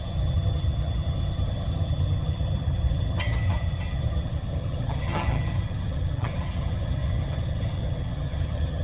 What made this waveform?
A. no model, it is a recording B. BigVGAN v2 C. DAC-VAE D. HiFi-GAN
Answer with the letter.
D